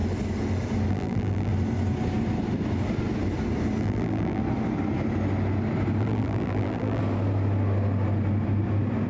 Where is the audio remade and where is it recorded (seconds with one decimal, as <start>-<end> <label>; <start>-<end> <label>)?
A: 0.0-0.9 recorded; 0.9-1.5 remade; 1.5-3.8 recorded; 3.8-4.4 remade; 4.4-6.0 recorded; 6.0-7.0 remade; 7.0-9.1 recorded